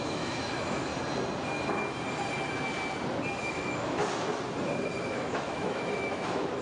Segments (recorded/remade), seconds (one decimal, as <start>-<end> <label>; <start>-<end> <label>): 0.0-0.9 remade; 0.9-3.4 recorded; 3.4-4.0 remade; 4.0-5.1 recorded; 5.1-6.6 remade